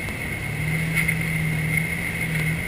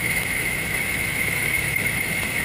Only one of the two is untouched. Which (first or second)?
first